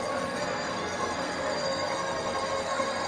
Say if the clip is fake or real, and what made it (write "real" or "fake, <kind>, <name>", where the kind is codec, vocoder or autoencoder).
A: fake, codec, SNAC